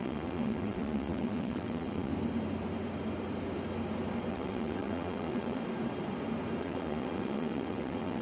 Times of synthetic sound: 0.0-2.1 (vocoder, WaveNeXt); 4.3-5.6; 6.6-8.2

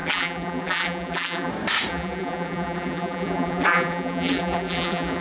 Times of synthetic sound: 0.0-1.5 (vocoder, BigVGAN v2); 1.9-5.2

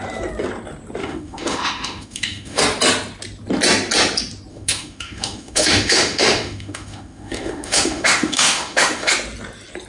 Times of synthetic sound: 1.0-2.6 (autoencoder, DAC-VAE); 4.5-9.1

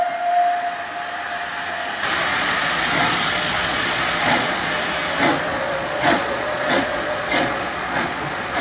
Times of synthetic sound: 2.3-4.7 (vocoder, Vocos); 5.5-8.6

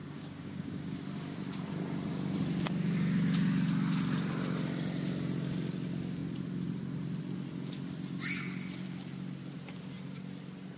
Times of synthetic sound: 0.0-1.0 (codec, DAC)